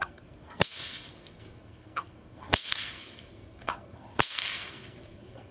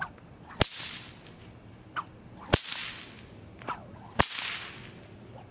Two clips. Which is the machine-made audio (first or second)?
first